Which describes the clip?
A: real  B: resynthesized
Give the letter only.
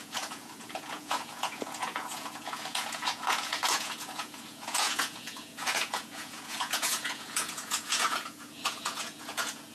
B